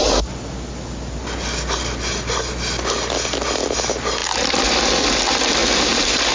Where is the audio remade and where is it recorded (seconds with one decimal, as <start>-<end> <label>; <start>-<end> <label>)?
0.0-5.6 recorded; 5.6-6.3 remade